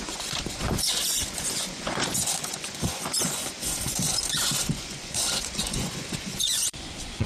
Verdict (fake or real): fake